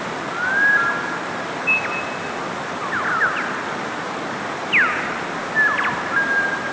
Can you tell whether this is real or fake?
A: real